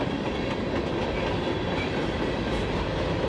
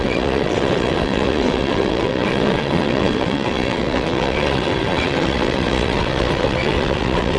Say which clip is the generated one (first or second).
second